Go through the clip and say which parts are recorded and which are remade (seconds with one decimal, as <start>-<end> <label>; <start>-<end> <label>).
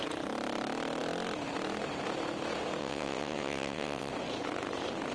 0.0-2.8 recorded; 2.8-4.1 remade; 4.1-5.1 recorded